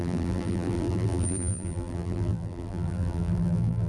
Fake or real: fake